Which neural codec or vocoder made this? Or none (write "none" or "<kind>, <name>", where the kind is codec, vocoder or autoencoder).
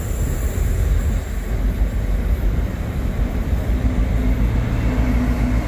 none